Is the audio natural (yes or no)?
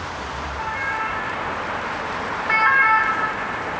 yes